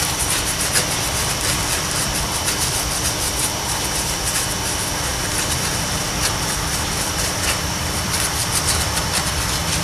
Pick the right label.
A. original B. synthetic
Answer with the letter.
B